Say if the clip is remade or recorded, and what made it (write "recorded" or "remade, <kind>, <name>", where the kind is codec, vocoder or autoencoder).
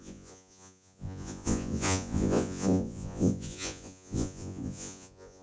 remade, vocoder, Vocos